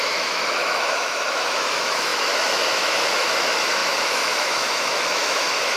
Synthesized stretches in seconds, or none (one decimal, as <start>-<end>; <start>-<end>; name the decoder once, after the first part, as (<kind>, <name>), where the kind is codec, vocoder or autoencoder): 0.0-5.8 (autoencoder, DAC-VAE)